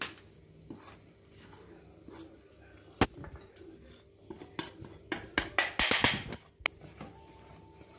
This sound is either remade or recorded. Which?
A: recorded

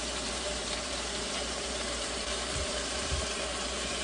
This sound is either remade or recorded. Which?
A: remade